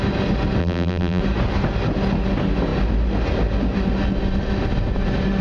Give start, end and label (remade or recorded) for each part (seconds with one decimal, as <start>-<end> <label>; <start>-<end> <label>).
0.0-0.6 recorded; 0.6-1.2 remade; 1.2-5.4 recorded